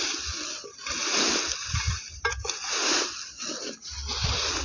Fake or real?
real